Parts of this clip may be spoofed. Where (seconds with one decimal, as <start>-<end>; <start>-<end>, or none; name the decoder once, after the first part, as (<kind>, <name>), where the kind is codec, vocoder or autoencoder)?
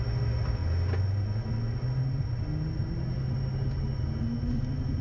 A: none